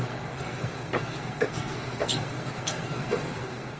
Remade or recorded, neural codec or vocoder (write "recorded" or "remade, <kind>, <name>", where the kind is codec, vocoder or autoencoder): remade, codec, SNAC